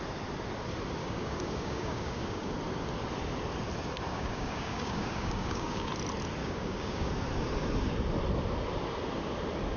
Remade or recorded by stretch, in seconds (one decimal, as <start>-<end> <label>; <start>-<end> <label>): 0.0-1.0 recorded; 1.0-2.5 remade; 2.5-4.1 recorded; 4.1-5.9 remade; 5.9-6.4 recorded; 6.4-7.1 remade; 7.1-9.8 recorded